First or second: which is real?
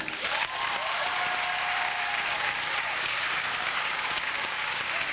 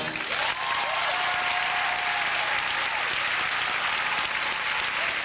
second